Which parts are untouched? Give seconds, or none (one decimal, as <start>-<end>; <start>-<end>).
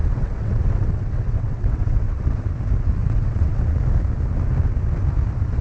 2.5-3.0; 3.6-5.6